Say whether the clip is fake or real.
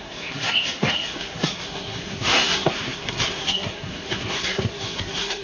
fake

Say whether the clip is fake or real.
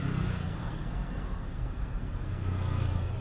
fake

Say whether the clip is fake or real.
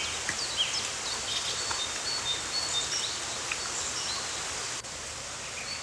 real